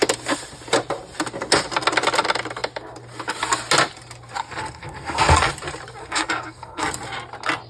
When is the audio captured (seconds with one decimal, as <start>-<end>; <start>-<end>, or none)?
0.0-4.4; 5.5-6.0; 6.9-7.7